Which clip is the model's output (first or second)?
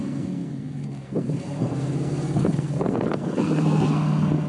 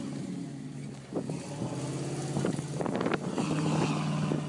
first